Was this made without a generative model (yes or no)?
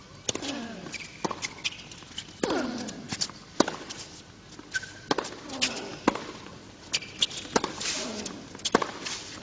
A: yes